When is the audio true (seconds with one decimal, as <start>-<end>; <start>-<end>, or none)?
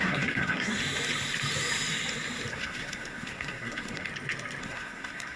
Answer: 0.8-2.5; 4.1-4.6